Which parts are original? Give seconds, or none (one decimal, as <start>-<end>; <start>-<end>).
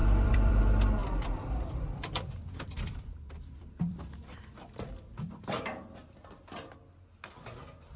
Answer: 0.6-1.0; 5.8-8.0